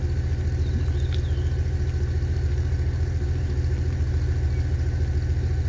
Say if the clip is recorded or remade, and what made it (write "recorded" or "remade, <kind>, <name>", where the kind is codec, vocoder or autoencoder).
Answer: recorded